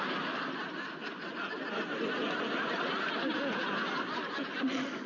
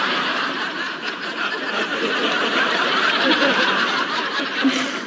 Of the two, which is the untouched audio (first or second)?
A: first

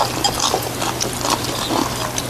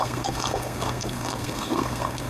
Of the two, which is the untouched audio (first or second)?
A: first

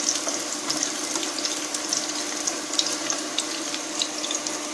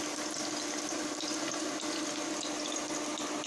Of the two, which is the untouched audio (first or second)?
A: second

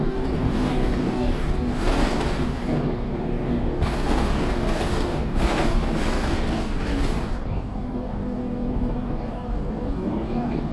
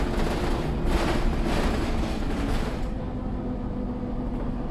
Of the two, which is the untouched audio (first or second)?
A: second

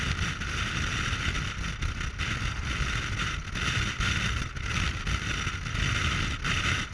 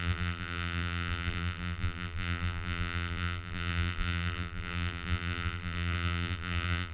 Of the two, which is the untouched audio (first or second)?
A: first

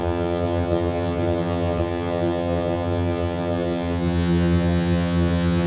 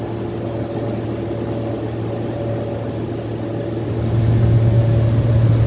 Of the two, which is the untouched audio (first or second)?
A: second